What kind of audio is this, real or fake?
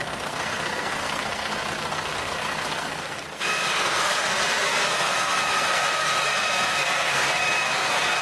fake